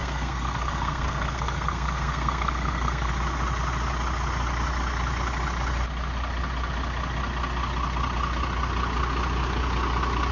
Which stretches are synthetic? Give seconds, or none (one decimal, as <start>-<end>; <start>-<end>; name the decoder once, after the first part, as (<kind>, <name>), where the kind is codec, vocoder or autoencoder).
0.0-3.1 (codec, SNAC)